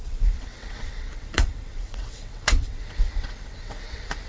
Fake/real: fake